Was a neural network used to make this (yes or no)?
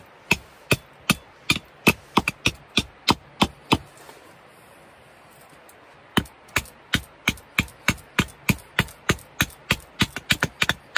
no